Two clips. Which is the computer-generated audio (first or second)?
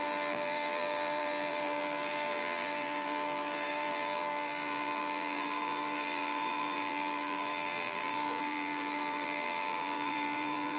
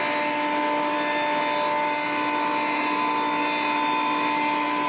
first